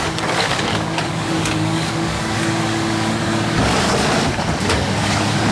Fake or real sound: fake